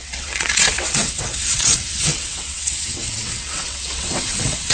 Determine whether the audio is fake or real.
fake